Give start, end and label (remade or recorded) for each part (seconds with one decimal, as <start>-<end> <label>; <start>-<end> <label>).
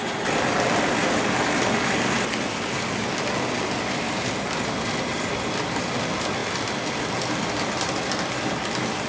0.0-9.1 recorded